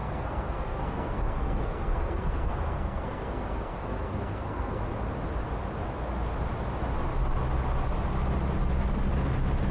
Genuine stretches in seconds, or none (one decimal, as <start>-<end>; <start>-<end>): 4.8-9.7